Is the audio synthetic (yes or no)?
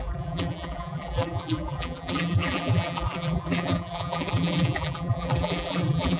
yes